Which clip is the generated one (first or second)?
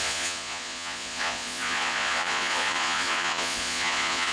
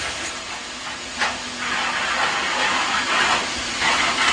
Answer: first